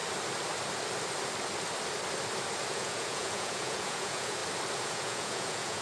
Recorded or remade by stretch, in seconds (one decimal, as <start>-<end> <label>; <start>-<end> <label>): 0.0-2.7 recorded; 2.7-4.4 remade; 4.4-4.9 recorded; 4.9-5.8 remade